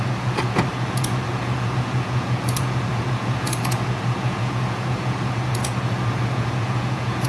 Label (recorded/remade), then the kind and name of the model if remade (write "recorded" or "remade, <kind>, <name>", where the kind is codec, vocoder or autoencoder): remade, vocoder, Vocos